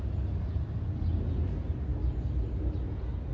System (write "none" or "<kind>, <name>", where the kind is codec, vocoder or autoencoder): none